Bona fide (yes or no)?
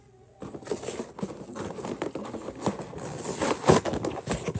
yes